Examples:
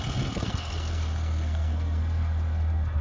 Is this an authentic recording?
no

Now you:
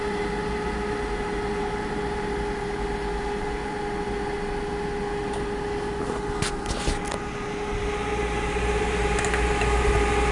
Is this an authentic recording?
yes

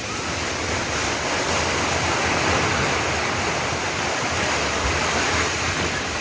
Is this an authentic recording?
yes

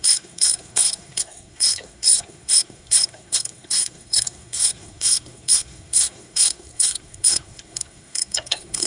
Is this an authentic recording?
no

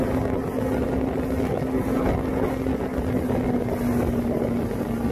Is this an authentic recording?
yes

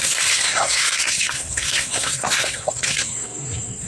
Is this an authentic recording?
no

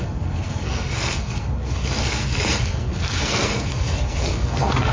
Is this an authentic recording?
no